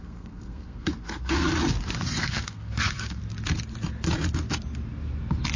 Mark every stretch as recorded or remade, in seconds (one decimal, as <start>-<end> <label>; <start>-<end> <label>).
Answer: 0.0-1.5 remade; 1.5-2.2 recorded; 2.2-3.2 remade; 3.2-5.6 recorded

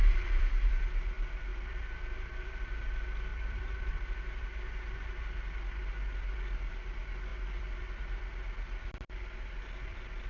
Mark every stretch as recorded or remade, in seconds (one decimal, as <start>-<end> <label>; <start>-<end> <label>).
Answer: 0.0-0.7 remade; 0.7-1.5 recorded; 1.5-2.9 remade; 2.9-3.3 recorded; 3.3-3.9 remade; 3.9-10.3 recorded

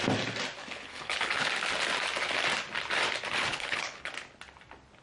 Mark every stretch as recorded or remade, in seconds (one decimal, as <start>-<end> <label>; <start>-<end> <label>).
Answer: 0.0-0.6 recorded; 0.6-1.5 remade; 1.5-3.5 recorded; 3.5-4.1 remade; 4.1-5.0 recorded

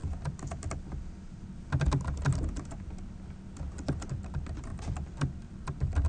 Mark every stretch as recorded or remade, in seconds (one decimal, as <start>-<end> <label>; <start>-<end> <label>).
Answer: 0.0-3.7 recorded; 3.7-4.7 remade; 4.7-5.6 recorded; 5.6-6.1 remade

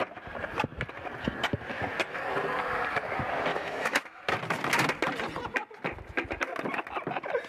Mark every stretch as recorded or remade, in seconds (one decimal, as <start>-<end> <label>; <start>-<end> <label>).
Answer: 0.0-3.5 recorded; 3.5-4.2 remade; 4.2-7.5 recorded

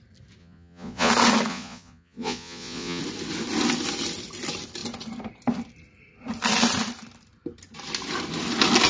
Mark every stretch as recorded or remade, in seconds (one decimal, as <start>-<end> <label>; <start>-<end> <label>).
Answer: 0.0-0.4 recorded; 0.4-1.1 remade; 1.1-1.5 recorded; 1.5-3.0 remade; 3.0-8.9 recorded